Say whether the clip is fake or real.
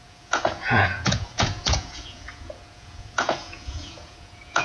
fake